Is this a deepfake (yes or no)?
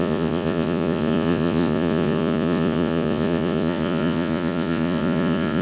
yes